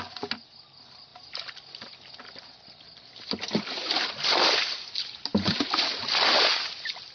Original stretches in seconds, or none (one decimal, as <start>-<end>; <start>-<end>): 0.0-7.1

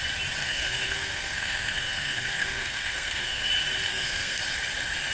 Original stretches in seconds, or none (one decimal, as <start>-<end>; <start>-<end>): 0.0-0.4; 3.5-3.9; 4.4-5.1

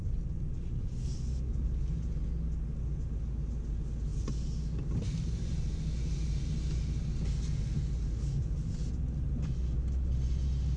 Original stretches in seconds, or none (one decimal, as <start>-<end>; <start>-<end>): 0.0-10.8

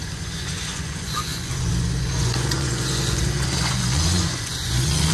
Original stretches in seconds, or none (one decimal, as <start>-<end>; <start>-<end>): none

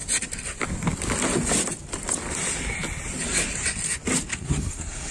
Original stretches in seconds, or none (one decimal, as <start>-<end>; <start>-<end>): 0.0-4.3

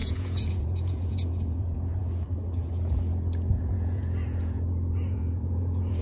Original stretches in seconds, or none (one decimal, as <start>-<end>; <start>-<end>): 2.0-3.5